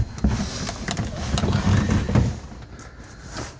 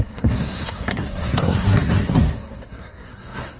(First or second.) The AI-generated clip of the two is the second